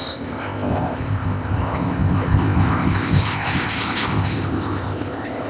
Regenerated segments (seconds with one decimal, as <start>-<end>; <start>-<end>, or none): 0.0-5.5